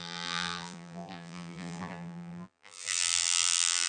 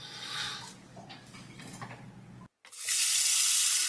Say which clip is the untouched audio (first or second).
second